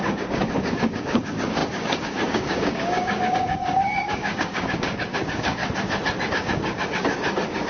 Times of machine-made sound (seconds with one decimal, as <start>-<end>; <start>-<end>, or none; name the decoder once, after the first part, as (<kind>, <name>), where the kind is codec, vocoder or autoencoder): 0.0-5.6 (codec, DAC); 6.3-7.7